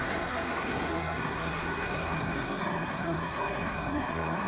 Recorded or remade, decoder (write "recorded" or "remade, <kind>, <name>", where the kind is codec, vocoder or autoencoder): remade, codec, SNAC